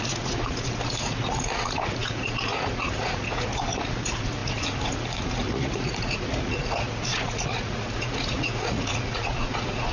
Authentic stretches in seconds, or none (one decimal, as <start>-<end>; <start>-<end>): none